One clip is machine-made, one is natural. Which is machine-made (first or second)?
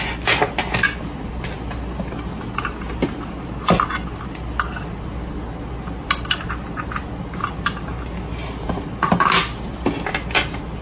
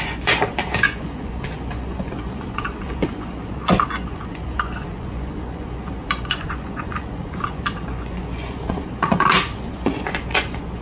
second